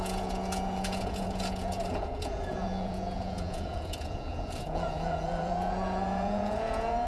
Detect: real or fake fake